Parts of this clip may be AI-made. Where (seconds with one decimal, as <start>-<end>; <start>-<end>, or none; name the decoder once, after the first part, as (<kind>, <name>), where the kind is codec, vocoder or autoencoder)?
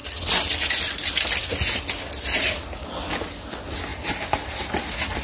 none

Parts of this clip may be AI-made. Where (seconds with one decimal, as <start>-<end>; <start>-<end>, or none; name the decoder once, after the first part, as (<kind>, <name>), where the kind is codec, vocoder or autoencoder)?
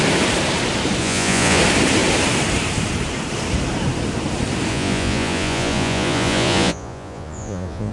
1.0-1.6 (vocoder, Vocos); 4.7-7.9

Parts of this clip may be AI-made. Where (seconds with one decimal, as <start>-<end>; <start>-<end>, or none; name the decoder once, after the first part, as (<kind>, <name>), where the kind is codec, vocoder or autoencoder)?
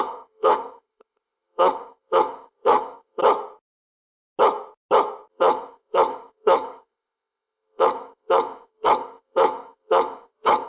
0.0-3.2 (codec, ZipCodec); 5.3-10.7